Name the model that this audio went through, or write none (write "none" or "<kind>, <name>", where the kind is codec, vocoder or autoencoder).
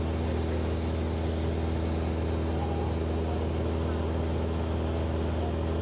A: none